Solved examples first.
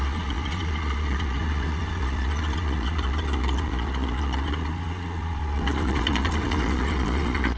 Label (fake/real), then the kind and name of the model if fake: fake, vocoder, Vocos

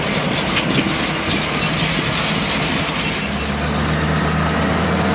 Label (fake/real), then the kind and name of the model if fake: real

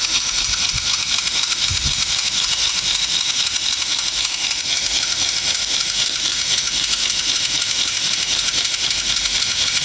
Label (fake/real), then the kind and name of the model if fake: fake, autoencoder, DAC-VAE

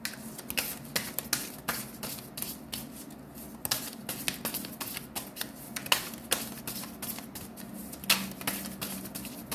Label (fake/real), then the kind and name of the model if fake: real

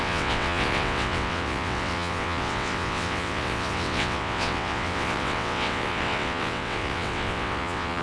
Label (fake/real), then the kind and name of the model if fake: fake, vocoder, WaveNeXt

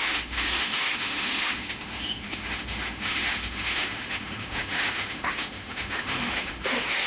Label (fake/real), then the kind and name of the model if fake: fake, autoencoder, DAC-VAE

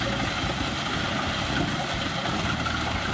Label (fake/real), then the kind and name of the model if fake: real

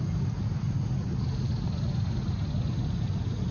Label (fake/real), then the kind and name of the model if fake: real